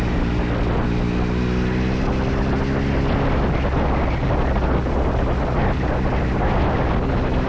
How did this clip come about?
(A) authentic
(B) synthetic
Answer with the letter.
A